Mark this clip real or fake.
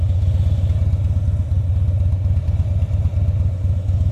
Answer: real